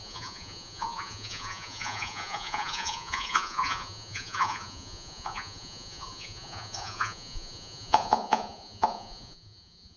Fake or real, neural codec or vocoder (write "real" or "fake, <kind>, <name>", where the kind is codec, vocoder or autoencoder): fake, vocoder, Vocos